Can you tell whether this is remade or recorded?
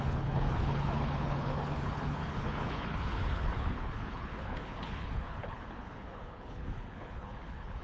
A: remade